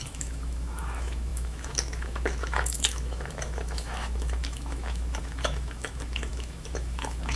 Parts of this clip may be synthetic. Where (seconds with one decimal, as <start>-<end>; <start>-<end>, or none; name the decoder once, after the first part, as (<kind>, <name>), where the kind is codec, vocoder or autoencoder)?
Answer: 0.0-7.4 (autoencoder, DAC-VAE)